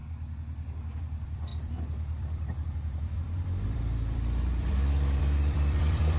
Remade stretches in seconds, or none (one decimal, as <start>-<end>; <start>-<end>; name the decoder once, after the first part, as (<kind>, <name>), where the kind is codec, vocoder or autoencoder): 1.0-6.2 (vocoder, BigVGAN v2)

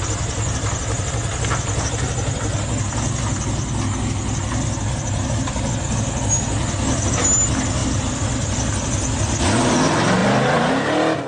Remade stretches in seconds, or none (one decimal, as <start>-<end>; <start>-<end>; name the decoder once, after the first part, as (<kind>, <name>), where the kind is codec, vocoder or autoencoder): 7.8-9.4 (vocoder, BigVGAN v2); 10.2-10.7

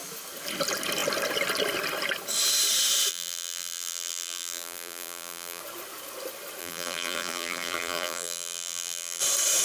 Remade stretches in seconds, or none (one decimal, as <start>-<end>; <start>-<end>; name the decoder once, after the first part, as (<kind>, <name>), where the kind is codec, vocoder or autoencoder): 3.1-5.6 (vocoder, BigVGAN v2); 6.6-9.2

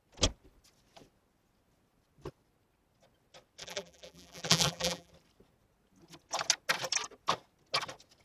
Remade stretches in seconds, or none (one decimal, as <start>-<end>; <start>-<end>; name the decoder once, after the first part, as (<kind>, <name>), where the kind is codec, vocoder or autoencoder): 3.6-5.1 (vocoder, BigVGAN v2)

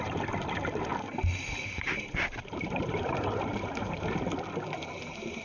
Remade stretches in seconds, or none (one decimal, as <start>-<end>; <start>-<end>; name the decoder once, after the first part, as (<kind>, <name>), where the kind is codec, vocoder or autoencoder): 0.9-4.1 (vocoder, BigVGAN v2)